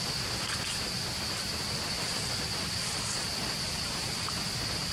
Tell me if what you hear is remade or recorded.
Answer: recorded